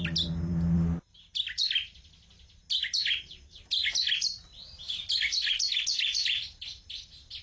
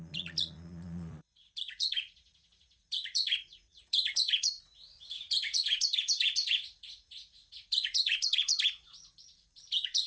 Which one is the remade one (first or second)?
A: second